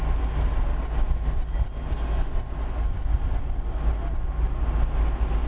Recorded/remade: recorded